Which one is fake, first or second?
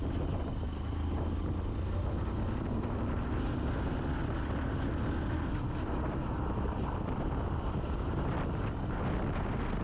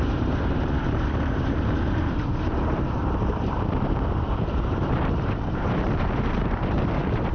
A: second